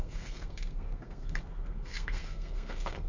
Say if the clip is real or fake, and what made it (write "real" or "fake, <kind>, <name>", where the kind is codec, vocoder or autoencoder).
fake, codec, SNAC